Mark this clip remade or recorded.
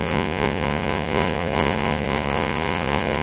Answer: remade